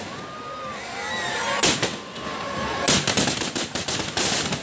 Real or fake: real